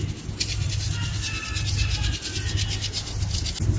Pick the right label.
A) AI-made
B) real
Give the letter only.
B